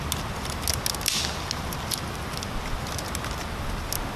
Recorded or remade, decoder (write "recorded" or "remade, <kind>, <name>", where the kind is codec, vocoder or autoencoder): recorded